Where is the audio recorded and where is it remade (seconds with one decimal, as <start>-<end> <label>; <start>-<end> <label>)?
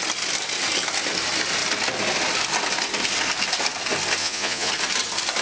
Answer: 0.0-4.2 recorded; 4.2-4.7 remade; 4.7-5.4 recorded